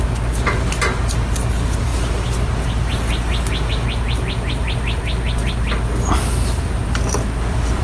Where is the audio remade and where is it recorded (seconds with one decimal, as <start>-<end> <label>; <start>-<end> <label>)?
0.0-7.8 recorded